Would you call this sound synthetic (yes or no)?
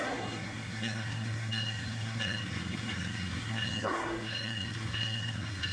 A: yes